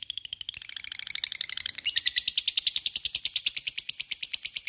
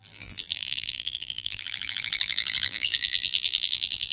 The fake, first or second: second